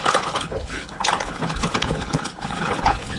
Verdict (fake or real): fake